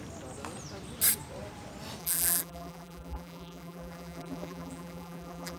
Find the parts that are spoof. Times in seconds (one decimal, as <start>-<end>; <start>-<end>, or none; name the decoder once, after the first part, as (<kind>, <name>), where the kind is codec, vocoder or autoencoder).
2.0-5.6 (vocoder, BigVGAN v2)